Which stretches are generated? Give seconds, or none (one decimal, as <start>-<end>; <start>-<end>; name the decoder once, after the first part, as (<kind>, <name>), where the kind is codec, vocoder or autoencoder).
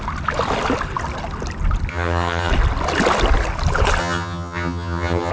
1.9-2.5 (vocoder, HiFi-GAN); 4.0-5.3